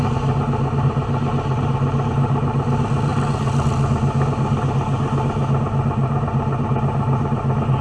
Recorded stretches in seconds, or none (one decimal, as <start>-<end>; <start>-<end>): 0.0-7.8